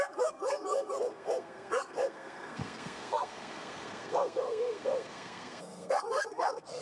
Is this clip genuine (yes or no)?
no